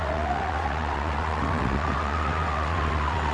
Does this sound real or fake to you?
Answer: fake